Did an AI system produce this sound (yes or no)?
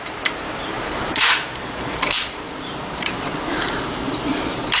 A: yes